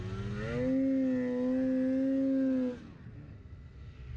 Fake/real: real